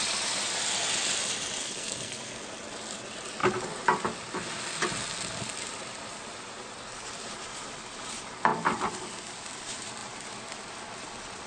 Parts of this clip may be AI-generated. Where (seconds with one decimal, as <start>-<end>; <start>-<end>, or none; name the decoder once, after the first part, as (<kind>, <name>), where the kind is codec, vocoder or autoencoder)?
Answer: 1.6-2.4 (codec, SNAC)

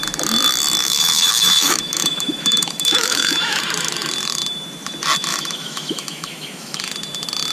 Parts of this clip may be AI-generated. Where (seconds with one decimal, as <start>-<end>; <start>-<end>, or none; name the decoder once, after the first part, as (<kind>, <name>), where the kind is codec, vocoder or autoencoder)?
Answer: 0.8-3.6 (autoencoder, DAC-VAE); 5.3-6.9

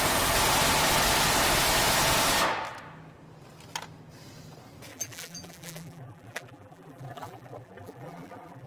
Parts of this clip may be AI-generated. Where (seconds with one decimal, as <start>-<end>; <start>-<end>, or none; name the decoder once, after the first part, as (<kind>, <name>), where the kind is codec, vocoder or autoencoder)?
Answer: 4.9-8.7 (vocoder, BigVGAN v2)

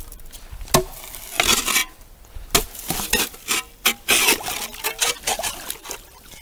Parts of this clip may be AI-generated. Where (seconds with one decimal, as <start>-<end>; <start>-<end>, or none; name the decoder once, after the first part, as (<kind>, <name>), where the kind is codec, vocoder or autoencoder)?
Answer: none

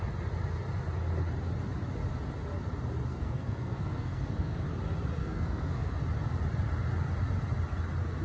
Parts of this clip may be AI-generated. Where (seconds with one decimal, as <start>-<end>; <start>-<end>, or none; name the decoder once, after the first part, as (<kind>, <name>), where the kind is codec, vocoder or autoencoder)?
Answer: 3.1-4.6 (codec, SNAC); 5.2-5.9

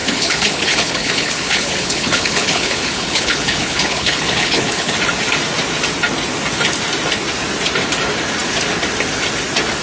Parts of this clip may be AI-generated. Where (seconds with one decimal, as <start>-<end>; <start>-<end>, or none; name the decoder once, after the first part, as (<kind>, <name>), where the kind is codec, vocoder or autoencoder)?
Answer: 0.0-4.9 (codec, HILCodec)

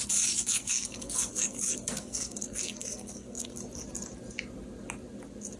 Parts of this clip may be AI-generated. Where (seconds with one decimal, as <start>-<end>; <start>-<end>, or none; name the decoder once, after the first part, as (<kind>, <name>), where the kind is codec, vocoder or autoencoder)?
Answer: 0.4-3.6 (codec, SNAC)